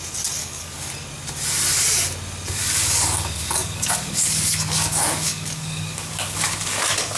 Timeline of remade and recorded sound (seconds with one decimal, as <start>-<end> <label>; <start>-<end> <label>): 0.0-0.4 recorded; 0.4-0.9 remade; 0.9-2.6 recorded; 2.6-7.2 remade